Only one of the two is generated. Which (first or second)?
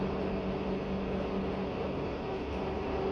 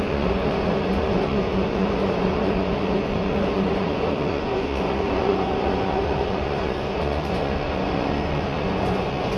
second